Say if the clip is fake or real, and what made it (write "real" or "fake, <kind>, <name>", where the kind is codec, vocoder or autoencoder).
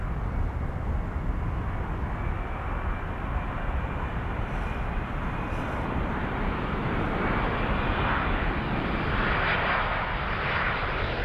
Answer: real